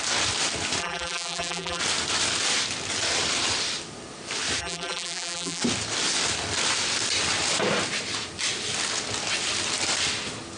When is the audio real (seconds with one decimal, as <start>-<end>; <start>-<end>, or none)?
0.0-0.8; 1.8-4.6; 5.6-10.6